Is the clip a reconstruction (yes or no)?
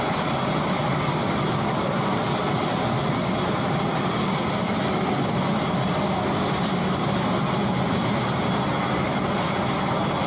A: no